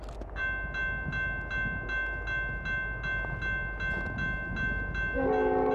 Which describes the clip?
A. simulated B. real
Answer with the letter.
B